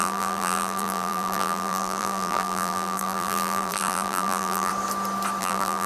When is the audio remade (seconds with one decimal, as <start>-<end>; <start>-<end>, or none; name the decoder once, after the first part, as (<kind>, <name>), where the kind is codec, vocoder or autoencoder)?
0.0-4.7 (vocoder, BigVGAN v2); 5.4-5.9